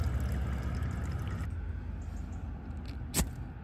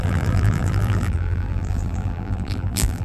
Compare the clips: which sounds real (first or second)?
first